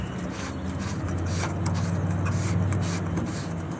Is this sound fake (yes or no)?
no